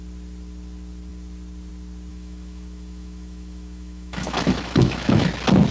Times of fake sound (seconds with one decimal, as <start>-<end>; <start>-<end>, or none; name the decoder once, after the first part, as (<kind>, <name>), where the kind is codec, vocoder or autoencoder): 2.1-5.3 (autoencoder, DAC-VAE)